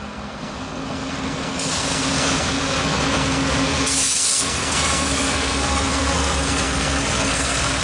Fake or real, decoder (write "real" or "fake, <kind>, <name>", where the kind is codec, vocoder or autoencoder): fake, codec, SNAC